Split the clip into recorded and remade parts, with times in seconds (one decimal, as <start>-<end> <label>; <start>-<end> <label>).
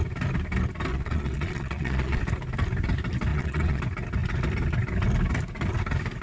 0.0-0.9 recorded; 0.9-2.2 remade; 2.2-3.3 recorded; 3.3-3.8 remade; 3.8-6.2 recorded